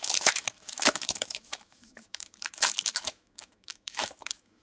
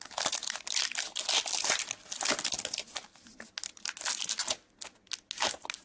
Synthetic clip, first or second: first